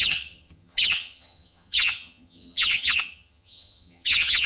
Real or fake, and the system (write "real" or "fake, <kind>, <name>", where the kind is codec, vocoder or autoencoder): fake, vocoder, HiFi-GAN